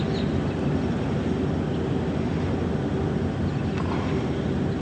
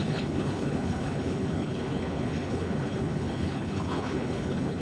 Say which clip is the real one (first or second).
first